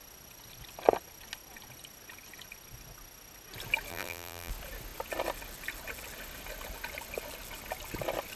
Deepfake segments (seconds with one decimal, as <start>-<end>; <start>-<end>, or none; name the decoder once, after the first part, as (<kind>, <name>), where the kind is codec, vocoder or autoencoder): 3.9-4.5 (vocoder, BigVGAN v2)